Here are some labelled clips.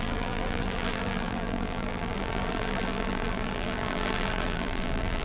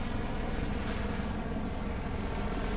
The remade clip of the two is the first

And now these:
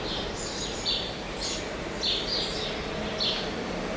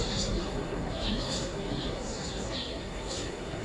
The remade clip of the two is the second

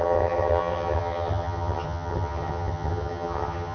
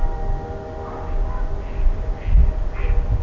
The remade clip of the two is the first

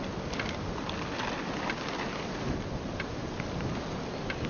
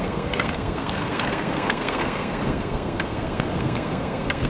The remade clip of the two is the second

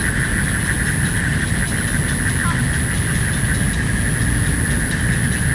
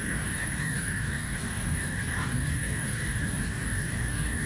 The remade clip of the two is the second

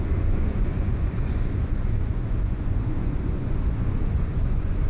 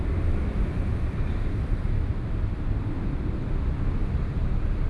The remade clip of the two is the first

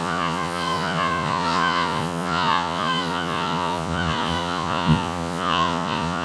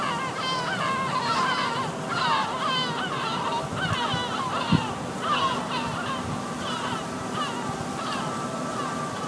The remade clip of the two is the first